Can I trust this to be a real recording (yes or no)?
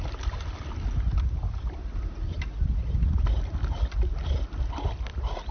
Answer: yes